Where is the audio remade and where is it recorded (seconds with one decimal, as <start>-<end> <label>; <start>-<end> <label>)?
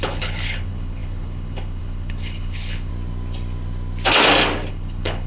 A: 0.0-2.9 remade; 2.9-4.7 recorded; 4.7-5.3 remade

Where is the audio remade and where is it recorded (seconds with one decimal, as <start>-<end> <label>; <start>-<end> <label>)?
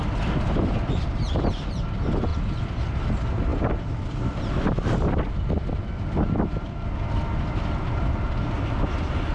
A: 0.0-9.3 recorded